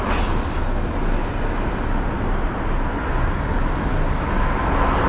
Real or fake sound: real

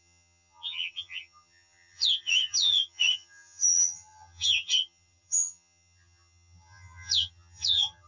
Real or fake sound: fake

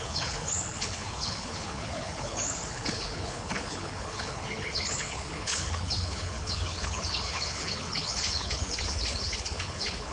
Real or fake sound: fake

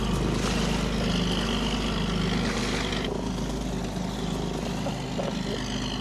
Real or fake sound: real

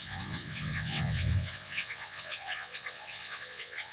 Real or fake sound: fake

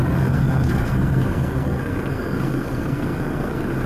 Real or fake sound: fake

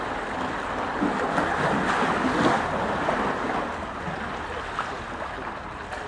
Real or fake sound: real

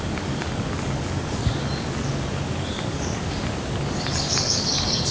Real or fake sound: fake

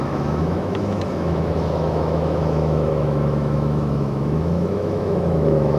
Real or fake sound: fake